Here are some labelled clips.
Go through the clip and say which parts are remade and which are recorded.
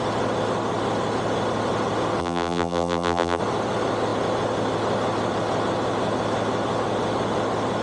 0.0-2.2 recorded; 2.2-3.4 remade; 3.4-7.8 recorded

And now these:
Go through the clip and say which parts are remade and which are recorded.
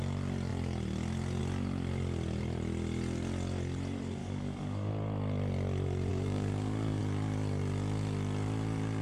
0.0-4.2 recorded; 4.2-4.9 remade; 4.9-6.1 recorded; 6.1-7.0 remade; 7.0-9.0 recorded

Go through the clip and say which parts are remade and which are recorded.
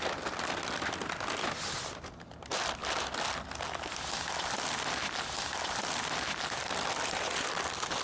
0.0-8.0 recorded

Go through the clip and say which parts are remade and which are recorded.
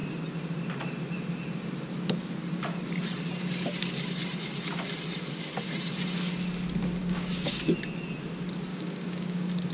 0.0-7.0 recorded; 7.0-7.6 remade; 7.6-8.7 recorded; 8.7-9.7 remade